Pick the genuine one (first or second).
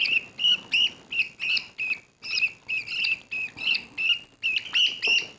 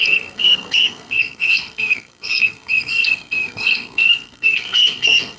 first